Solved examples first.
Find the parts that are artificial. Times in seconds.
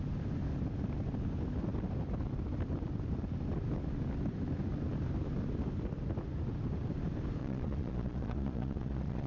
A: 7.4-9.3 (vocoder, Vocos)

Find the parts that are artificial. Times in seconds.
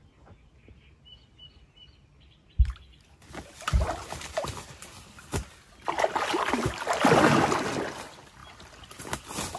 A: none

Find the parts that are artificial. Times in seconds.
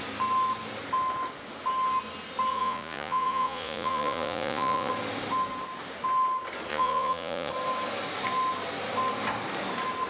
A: 2.5-4.9 (vocoder, Vocos); 6.7-7.5